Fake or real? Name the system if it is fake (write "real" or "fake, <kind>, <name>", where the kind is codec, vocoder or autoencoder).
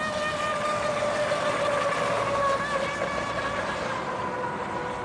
real